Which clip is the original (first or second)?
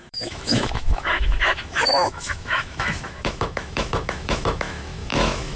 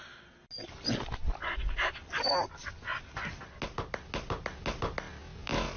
second